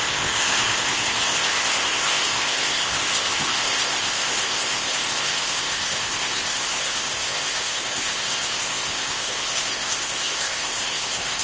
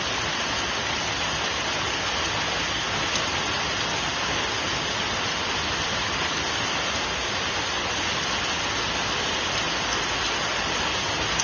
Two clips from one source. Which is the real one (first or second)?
second